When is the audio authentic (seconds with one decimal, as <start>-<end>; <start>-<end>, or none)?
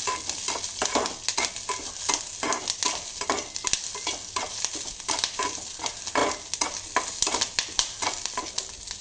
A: 0.0-9.0